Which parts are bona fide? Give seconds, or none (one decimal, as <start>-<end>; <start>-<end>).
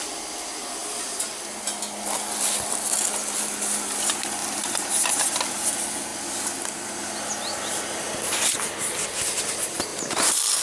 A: 0.0-4.4; 5.2-9.9